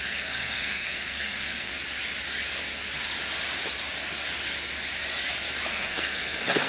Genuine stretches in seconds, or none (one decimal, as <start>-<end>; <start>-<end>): 1.7-5.7